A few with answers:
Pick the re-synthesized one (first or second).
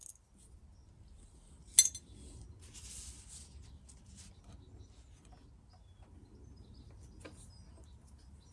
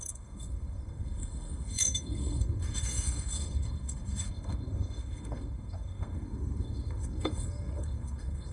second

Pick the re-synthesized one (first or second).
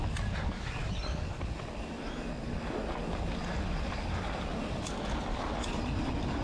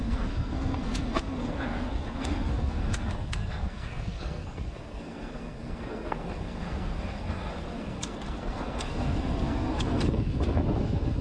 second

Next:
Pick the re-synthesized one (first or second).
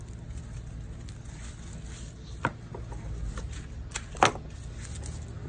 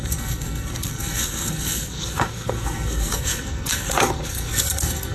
second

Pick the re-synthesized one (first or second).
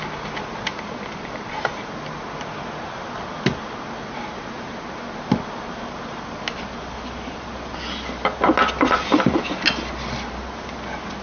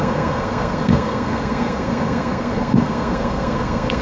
second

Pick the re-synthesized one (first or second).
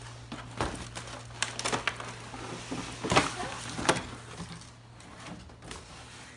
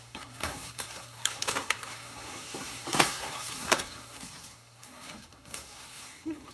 second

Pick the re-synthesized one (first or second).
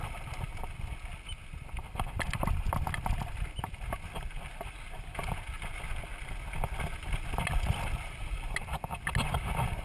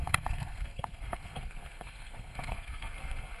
second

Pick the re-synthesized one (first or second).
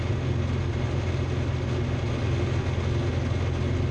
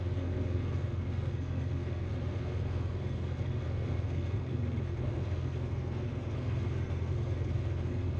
second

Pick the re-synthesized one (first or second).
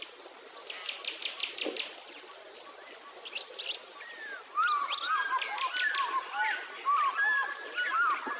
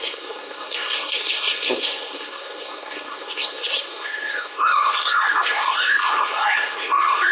second